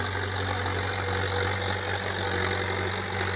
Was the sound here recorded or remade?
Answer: recorded